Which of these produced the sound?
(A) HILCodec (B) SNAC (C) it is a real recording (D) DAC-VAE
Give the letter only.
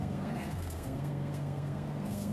B